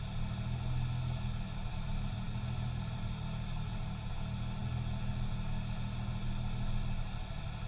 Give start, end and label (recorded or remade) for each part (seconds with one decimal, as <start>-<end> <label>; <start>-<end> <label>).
0.0-1.7 recorded; 1.7-4.1 remade; 4.1-7.7 recorded